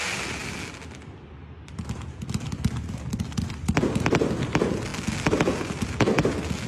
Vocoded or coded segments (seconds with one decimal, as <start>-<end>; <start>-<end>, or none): none